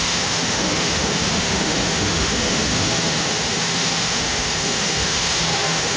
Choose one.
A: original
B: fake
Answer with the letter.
B